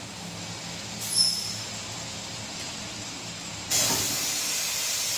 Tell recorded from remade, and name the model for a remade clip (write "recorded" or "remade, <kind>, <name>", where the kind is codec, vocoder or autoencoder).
recorded